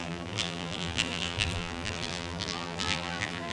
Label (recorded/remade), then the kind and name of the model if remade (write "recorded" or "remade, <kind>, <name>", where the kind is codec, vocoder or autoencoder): remade, vocoder, BigVGAN v2